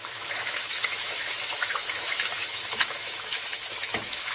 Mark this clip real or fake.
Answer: fake